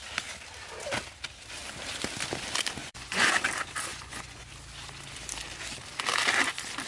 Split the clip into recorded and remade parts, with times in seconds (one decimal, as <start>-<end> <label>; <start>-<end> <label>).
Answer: 0.0-2.8 recorded; 2.8-3.3 remade; 3.3-3.9 recorded; 3.9-4.5 remade; 4.5-6.9 recorded